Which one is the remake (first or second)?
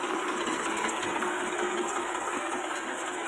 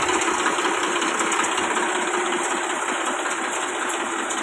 first